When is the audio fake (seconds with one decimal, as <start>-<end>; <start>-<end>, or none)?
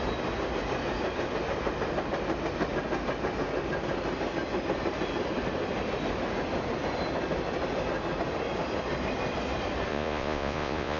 9.9-11.0